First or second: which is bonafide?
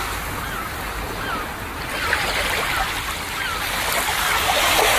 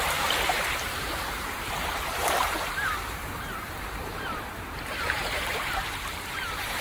first